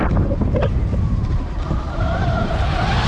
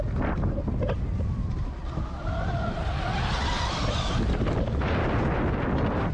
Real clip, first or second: second